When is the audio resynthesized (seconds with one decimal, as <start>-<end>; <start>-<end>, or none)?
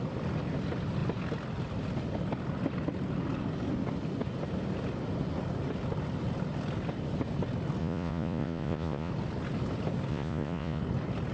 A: 7.8-9.1; 10.1-10.8